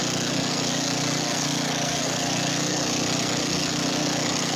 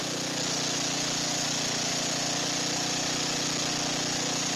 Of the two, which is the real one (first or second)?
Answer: second